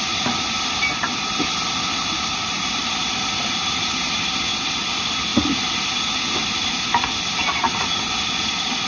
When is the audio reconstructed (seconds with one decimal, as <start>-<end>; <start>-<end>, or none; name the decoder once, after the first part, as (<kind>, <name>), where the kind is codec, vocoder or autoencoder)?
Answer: none